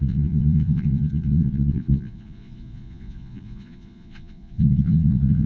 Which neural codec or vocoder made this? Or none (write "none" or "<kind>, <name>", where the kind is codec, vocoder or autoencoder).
vocoder, Vocos